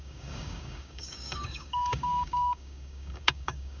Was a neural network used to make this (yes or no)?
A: yes